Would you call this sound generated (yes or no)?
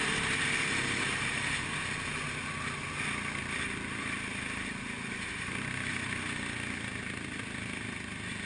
no